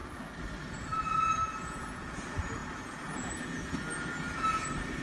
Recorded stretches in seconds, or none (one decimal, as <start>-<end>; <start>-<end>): 0.0-0.7